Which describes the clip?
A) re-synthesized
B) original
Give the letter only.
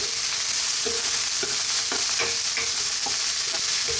B